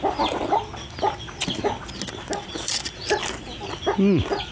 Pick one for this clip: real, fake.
real